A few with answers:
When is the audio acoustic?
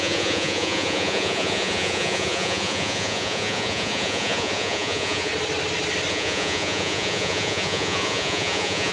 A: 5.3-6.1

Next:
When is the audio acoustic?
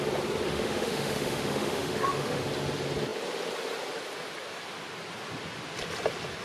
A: 0.0-0.5; 2.4-6.4